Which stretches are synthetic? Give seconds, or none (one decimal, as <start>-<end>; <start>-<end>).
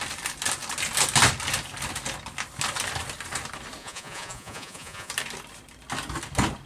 3.8-5.1